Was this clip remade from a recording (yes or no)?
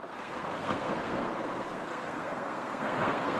yes